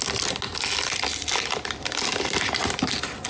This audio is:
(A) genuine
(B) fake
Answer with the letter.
A